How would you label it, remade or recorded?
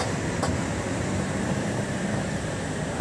remade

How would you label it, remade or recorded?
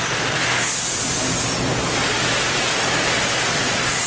remade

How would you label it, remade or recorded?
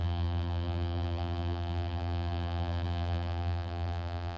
remade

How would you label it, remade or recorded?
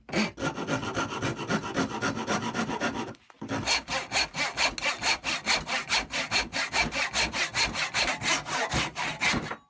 recorded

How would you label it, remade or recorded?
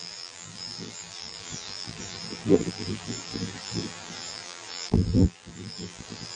remade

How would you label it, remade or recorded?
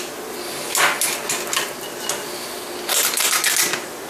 recorded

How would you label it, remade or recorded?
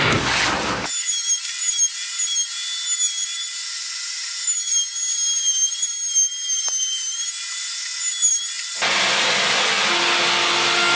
recorded